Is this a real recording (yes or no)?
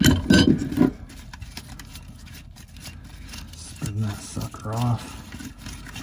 yes